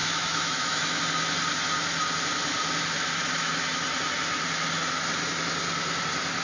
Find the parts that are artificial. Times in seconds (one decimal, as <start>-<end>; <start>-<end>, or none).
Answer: 0.0-1.0; 3.2-3.8